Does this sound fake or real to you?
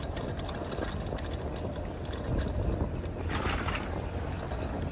real